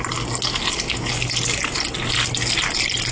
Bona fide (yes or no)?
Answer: yes